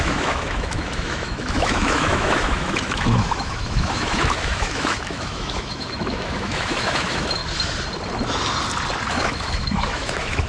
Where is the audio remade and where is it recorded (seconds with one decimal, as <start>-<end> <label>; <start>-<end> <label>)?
0.0-7.4 remade; 7.4-9.1 recorded; 9.1-10.5 remade